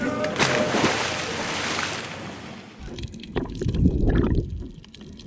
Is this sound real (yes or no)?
yes